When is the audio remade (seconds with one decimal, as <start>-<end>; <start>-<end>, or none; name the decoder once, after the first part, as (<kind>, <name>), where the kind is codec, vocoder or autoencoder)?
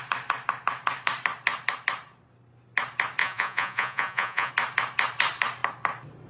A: 3.2-4.5 (vocoder, Vocos)